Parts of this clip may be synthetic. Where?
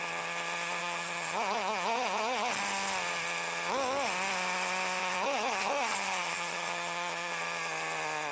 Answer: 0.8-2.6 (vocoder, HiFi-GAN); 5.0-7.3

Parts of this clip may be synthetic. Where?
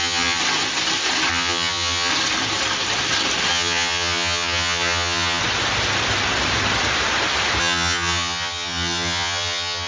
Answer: 0.0-0.4 (vocoder, HiFi-GAN); 1.3-2.1; 3.5-5.4; 7.6-9.9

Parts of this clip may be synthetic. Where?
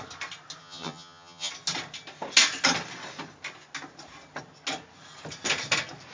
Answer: 0.6-1.5 (vocoder, HiFi-GAN)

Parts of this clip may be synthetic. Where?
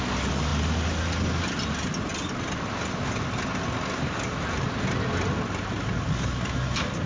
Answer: none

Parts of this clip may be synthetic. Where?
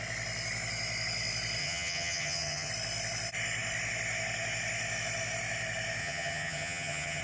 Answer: 1.6-2.7 (vocoder, HiFi-GAN); 6.0-7.2